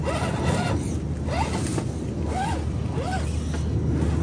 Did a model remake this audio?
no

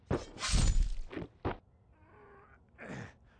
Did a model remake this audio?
no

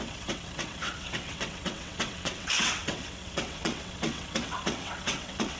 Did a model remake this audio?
yes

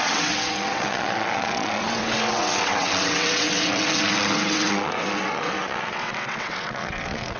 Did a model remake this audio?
yes